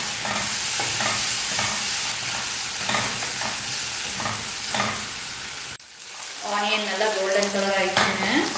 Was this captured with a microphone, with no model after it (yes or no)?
yes